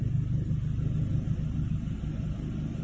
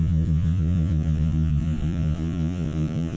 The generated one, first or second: second